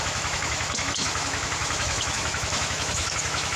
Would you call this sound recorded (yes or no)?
no